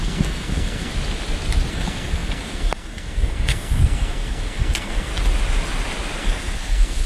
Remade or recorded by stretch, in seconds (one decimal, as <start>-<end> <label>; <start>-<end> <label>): 0.0-0.9 remade; 0.9-1.7 recorded; 1.7-5.1 remade; 5.1-6.2 recorded; 6.2-7.1 remade